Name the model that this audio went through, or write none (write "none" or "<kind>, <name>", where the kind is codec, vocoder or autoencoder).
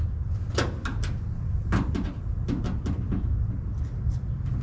none